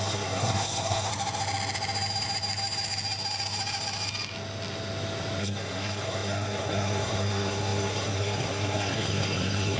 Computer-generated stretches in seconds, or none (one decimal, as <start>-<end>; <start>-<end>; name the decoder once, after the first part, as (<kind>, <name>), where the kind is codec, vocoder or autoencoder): 0.0-1.1 (codec, SNAC); 5.4-9.8